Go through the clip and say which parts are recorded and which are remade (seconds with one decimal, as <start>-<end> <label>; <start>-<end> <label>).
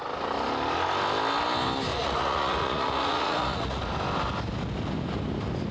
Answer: 0.0-1.9 recorded; 1.9-3.8 remade; 3.8-5.7 recorded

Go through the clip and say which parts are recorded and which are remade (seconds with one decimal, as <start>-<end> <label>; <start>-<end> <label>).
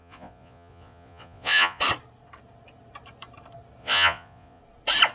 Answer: 0.0-1.8 remade; 1.8-3.8 recorded; 3.8-4.6 remade; 4.6-5.1 recorded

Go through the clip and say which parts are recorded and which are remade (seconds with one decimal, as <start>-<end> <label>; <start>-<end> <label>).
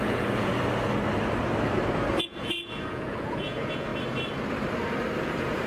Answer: 0.0-0.5 remade; 0.5-2.2 recorded; 2.2-3.9 remade; 3.9-5.2 recorded; 5.2-5.7 remade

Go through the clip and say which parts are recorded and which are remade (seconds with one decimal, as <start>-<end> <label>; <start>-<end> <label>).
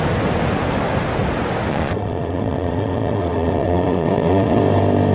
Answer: 0.0-1.7 recorded; 1.7-4.6 remade; 4.6-5.1 recorded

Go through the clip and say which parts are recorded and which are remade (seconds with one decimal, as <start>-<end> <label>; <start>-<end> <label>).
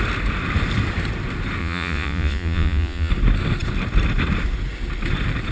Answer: 0.0-1.6 recorded; 1.6-3.1 remade; 3.1-5.5 recorded